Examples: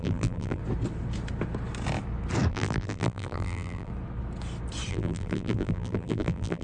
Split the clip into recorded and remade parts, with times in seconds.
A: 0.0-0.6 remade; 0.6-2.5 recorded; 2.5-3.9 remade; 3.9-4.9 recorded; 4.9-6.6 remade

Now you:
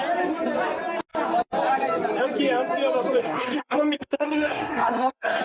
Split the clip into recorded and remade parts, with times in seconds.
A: 0.0-3.2 recorded; 3.2-5.4 remade

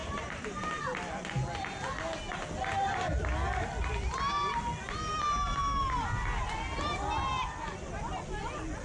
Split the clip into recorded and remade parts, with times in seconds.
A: 0.0-0.8 remade; 0.8-7.3 recorded; 7.3-8.0 remade; 8.0-8.8 recorded

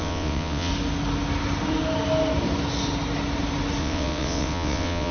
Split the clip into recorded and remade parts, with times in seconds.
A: 0.0-0.7 remade; 0.7-3.8 recorded; 3.8-5.1 remade

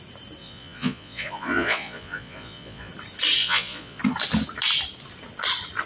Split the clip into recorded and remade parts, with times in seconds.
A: 0.0-0.4 recorded; 0.4-2.9 remade; 2.9-3.4 recorded; 3.4-4.0 remade; 4.0-5.9 recorded

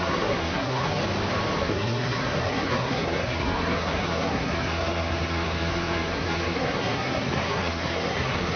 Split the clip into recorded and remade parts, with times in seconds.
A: 0.0-1.0 remade; 1.0-1.6 recorded; 1.6-8.6 remade